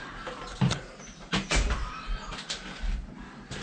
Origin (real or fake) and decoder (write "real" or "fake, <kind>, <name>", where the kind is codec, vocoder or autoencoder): real